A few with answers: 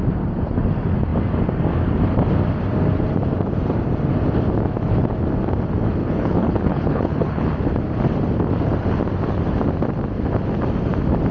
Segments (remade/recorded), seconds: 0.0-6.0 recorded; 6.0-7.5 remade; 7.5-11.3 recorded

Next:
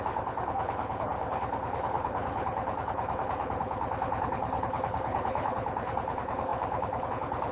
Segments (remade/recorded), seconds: 0.0-7.5 remade

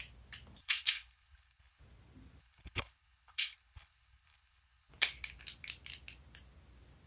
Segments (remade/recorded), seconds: 0.0-0.6 recorded; 0.6-1.8 remade; 1.8-2.4 recorded; 2.4-4.9 remade; 4.9-7.1 recorded

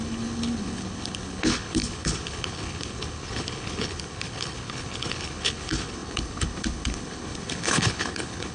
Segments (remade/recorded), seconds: 0.0-8.5 remade